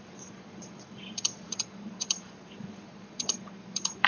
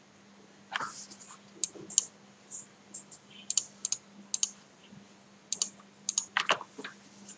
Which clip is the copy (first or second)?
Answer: first